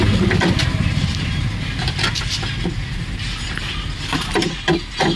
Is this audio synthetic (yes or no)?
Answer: no